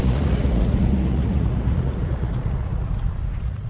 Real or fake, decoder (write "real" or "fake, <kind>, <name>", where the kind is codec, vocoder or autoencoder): fake, vocoder, Vocos